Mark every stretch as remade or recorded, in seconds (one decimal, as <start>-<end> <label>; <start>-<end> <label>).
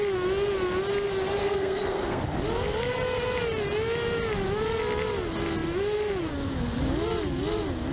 0.0-1.4 recorded; 1.4-2.2 remade; 2.2-7.9 recorded